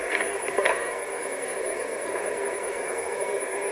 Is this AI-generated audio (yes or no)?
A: yes